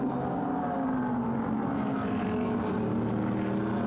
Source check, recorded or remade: recorded